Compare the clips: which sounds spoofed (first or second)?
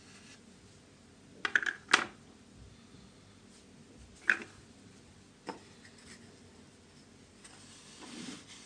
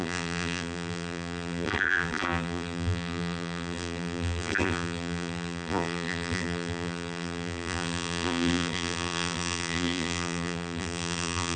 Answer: second